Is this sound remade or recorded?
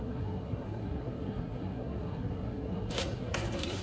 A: remade